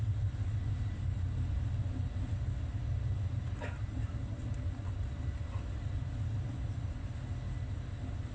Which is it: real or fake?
real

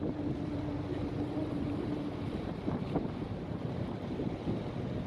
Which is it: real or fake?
real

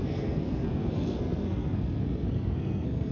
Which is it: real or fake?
fake